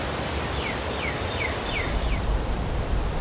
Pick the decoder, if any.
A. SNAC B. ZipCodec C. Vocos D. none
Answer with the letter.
D